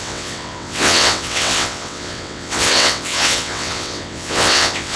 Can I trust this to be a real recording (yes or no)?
no